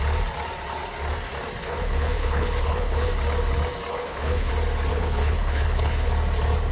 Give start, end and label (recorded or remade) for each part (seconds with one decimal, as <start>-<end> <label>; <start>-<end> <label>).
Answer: 0.0-1.6 recorded; 1.6-3.1 remade; 3.1-3.9 recorded; 3.9-4.5 remade; 4.5-4.9 recorded; 4.9-6.1 remade; 6.1-6.7 recorded